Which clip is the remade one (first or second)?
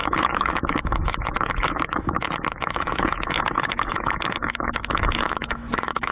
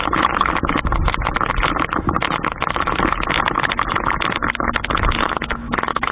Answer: first